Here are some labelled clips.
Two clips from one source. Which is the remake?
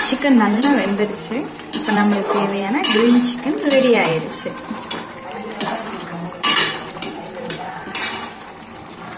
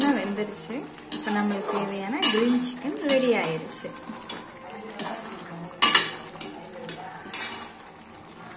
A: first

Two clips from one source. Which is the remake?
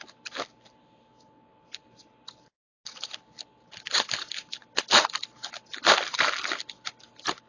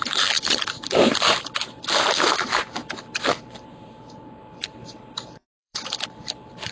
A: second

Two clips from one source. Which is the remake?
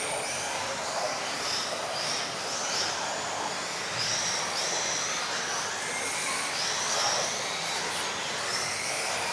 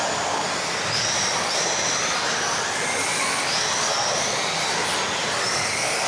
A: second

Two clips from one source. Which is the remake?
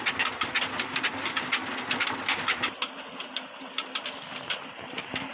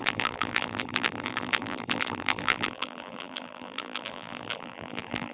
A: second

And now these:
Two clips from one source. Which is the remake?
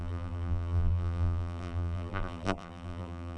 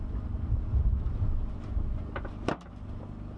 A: first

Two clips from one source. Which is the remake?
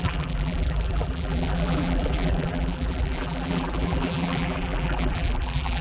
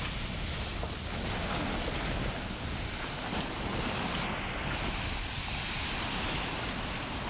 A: first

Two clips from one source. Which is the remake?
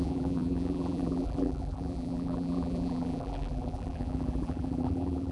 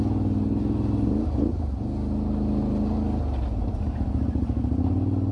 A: first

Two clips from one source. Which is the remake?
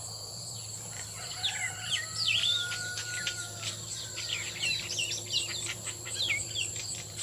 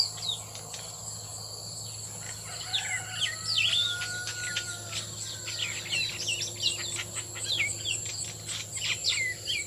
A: first